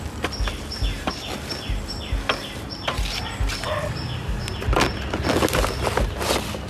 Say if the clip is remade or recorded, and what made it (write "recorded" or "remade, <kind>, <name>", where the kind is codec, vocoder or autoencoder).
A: recorded